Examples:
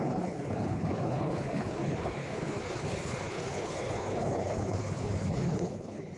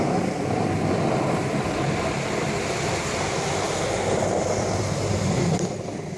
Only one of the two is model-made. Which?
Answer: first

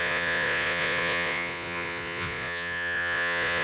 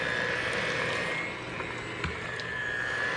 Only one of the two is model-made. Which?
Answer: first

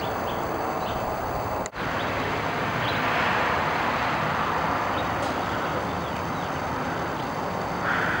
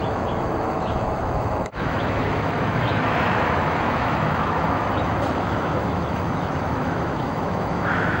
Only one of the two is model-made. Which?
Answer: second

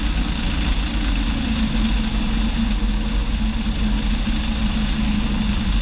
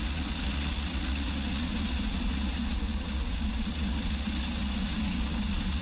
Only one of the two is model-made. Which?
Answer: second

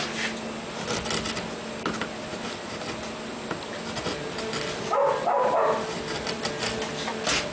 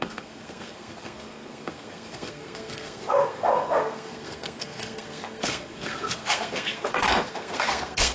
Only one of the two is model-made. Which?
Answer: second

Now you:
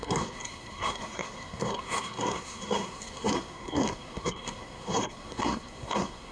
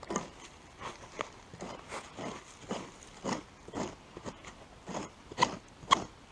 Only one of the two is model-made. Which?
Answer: first